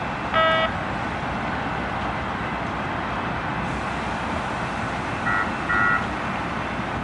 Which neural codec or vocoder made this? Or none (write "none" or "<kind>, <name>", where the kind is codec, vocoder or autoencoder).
none